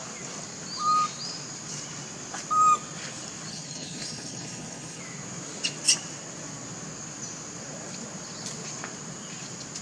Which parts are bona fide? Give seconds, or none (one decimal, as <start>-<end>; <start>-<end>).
0.0-3.5; 5.0-9.8